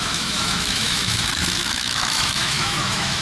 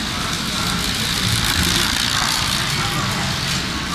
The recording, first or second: second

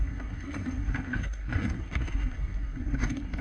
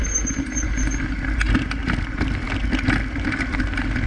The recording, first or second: second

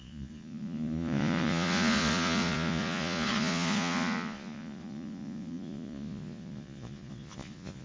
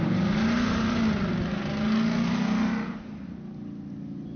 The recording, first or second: second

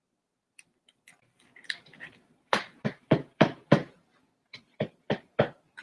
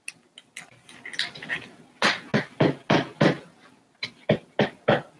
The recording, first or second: second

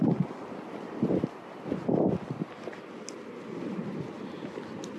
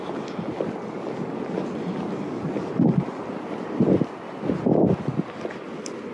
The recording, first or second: second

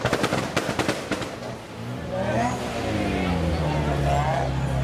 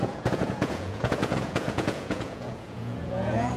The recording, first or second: first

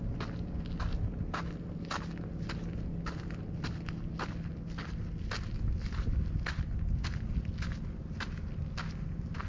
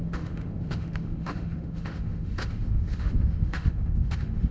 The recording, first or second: first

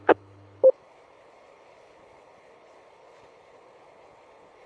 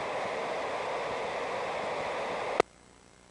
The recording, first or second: second